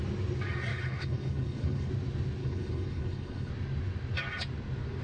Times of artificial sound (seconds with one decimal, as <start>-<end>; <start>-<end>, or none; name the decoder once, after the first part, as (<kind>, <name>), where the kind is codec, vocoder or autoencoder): 0.7-1.9 (codec, HILCodec); 2.4-3.5